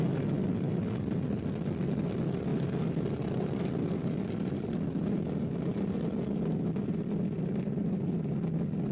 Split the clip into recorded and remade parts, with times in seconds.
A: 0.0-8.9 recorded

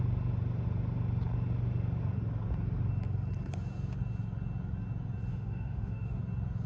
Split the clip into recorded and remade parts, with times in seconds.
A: 0.0-5.3 recorded; 5.3-6.2 remade; 6.2-6.7 recorded

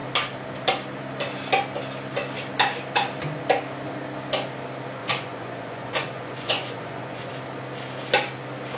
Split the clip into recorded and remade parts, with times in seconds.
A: 0.0-5.0 recorded; 5.0-7.3 remade; 7.3-8.8 recorded

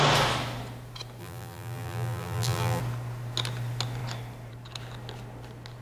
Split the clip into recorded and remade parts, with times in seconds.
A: 0.0-1.2 recorded; 1.2-2.8 remade; 2.8-5.8 recorded